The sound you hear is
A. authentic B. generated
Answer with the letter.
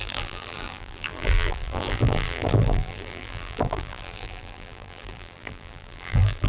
B